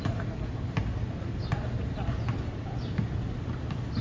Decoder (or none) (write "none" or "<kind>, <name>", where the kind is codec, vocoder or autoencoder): none